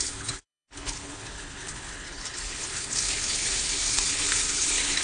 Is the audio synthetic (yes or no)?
yes